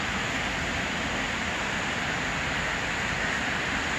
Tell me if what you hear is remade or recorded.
recorded